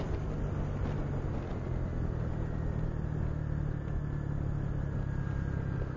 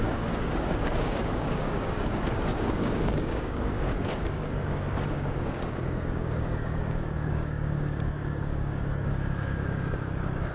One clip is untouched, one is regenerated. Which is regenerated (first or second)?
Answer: second